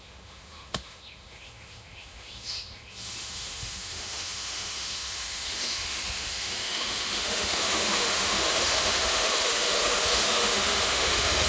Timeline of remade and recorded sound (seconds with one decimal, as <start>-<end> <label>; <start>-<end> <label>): 0.0-11.5 remade